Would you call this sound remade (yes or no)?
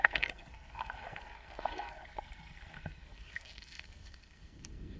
yes